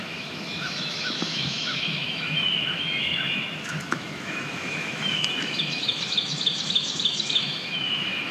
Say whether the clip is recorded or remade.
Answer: remade